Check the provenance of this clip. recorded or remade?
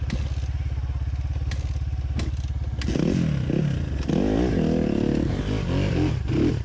recorded